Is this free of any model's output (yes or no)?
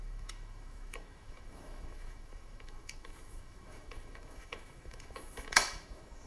no